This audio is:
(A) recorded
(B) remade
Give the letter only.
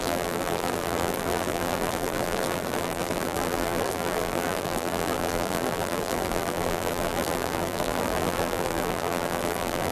B